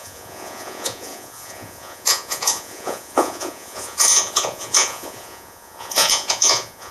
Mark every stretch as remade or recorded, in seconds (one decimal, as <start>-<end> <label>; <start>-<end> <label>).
0.0-6.9 remade